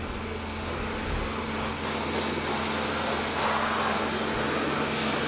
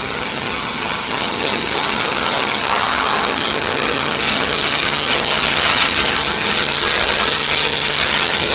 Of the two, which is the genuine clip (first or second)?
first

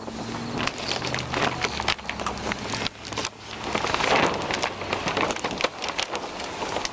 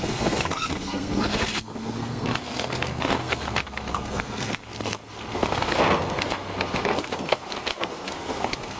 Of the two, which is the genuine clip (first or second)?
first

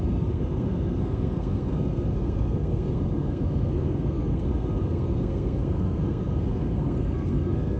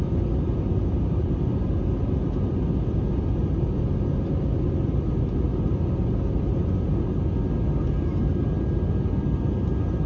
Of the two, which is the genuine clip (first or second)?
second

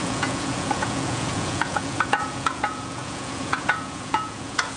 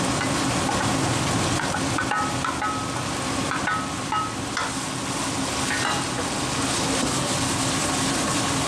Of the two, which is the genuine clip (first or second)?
second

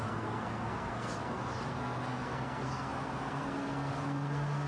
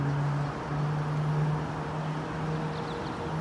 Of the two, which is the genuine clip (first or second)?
second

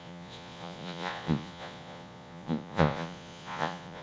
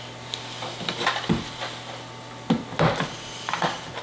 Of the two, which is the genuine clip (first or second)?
second